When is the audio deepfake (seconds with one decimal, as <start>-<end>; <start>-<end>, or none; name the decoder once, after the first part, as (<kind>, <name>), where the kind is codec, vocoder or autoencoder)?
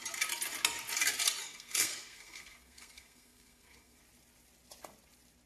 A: 1.4-4.0 (codec, SNAC)